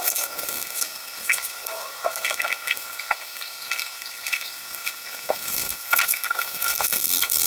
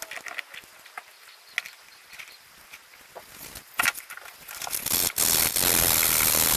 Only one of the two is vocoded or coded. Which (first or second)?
first